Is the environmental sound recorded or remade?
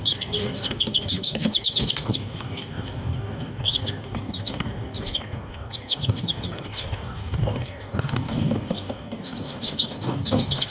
remade